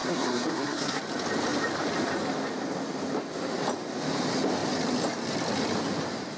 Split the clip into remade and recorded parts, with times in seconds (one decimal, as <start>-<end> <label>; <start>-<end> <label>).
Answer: 0.0-1.0 remade; 1.0-6.4 recorded